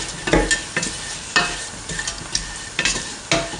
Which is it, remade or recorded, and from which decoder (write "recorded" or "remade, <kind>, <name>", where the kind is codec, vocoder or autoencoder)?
recorded